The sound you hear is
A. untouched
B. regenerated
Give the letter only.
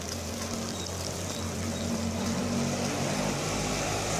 A